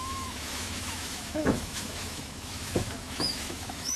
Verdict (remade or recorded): remade